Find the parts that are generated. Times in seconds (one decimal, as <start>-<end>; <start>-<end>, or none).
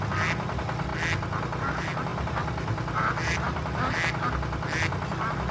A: 0.0-0.9; 1.6-5.5